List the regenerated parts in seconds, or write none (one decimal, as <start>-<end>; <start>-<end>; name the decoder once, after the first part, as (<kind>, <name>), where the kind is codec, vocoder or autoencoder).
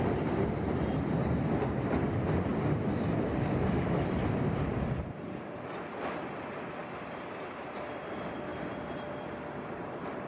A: 0.0-6.8 (vocoder, BigVGAN v2); 7.5-10.3